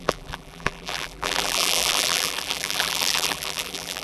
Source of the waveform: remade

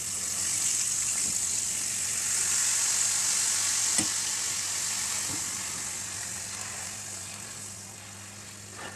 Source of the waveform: recorded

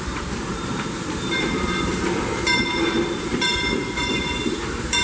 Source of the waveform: remade